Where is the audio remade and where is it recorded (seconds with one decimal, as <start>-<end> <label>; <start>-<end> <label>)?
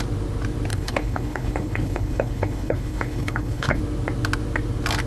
0.0-0.7 recorded; 0.7-3.8 remade; 3.8-5.1 recorded